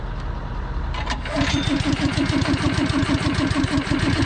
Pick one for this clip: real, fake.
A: real